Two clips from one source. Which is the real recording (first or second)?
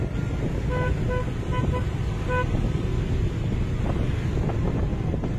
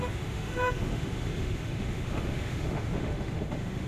first